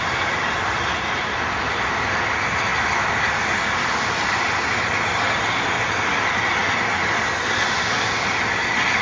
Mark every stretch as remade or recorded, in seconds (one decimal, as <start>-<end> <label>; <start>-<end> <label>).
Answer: 0.0-9.0 recorded